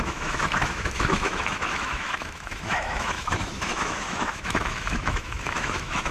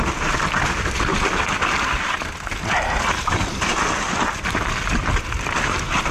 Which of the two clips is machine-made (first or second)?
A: first